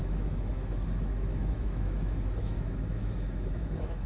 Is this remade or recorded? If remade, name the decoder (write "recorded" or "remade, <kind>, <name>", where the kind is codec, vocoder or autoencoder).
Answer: remade, autoencoder, DAC-VAE